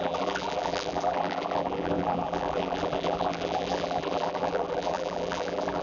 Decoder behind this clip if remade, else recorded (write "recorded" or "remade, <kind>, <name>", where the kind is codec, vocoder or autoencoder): remade, vocoder, BigVGAN v2